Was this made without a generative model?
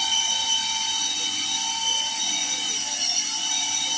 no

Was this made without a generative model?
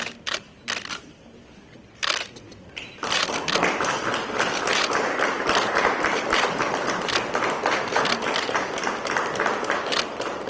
yes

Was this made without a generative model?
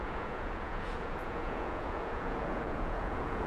no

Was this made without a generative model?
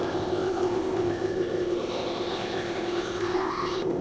no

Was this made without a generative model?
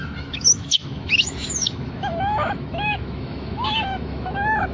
no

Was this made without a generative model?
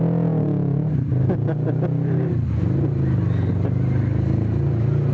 yes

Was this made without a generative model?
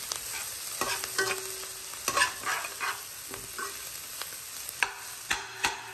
yes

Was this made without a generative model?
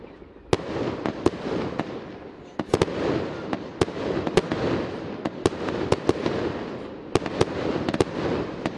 yes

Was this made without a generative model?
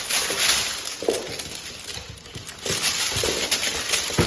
yes